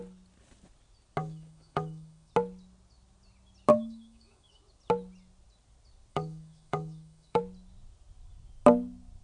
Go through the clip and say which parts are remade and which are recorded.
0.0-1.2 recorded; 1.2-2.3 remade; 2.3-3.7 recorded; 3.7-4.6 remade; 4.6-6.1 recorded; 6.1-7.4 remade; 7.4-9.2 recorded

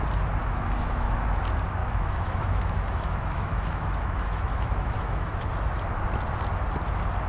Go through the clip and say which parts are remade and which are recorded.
0.0-0.4 recorded; 0.4-1.4 remade; 1.4-1.8 recorded; 1.8-5.5 remade; 5.5-7.3 recorded